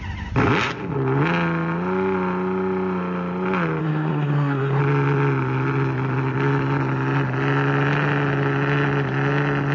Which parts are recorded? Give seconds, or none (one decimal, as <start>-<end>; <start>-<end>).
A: 0.0-3.8; 4.8-9.7